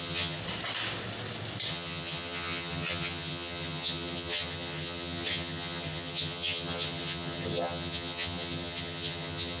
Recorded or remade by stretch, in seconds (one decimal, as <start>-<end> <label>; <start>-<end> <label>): 0.0-0.4 remade; 0.4-1.7 recorded; 1.7-9.6 remade